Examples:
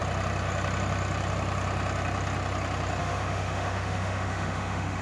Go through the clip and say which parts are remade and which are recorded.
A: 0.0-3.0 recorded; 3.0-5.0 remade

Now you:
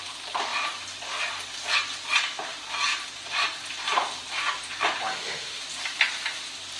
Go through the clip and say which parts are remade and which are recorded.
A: 0.0-5.1 recorded; 5.1-5.6 remade; 5.6-6.8 recorded

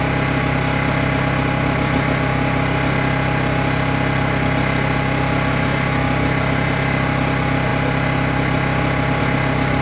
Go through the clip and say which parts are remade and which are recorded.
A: 0.0-9.8 recorded